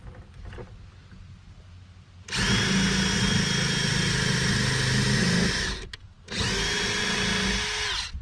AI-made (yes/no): no